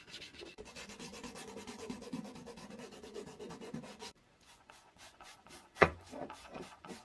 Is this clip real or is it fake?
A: fake